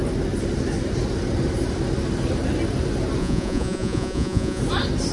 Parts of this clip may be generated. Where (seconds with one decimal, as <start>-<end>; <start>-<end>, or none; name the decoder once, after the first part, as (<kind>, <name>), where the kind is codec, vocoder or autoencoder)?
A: 3.2-4.6 (vocoder, Vocos)